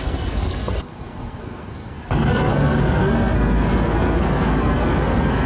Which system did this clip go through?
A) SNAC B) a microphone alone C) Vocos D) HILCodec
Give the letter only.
A